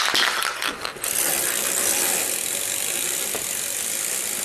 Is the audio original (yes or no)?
yes